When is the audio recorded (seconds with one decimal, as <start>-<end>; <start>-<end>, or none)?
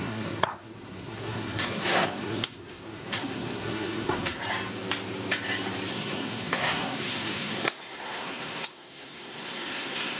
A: 4.4-5.9